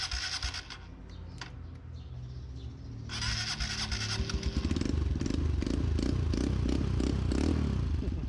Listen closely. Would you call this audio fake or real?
real